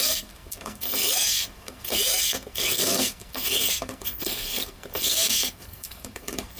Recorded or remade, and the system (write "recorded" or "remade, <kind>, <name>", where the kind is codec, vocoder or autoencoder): remade, codec, SNAC